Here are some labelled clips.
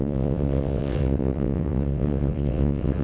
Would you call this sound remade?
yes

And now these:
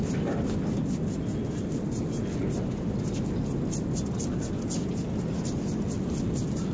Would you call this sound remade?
no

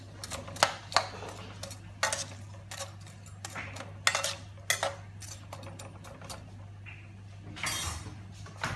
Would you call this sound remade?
no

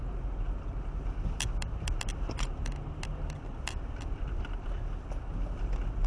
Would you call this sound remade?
no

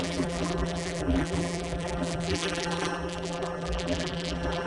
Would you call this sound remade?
yes